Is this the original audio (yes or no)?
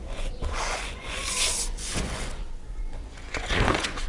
no